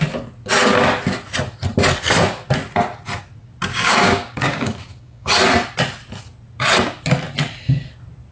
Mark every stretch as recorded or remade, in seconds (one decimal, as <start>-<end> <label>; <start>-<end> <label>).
0.0-3.7 recorded; 3.7-5.3 remade; 5.3-8.3 recorded